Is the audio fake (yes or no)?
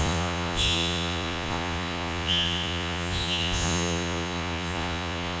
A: yes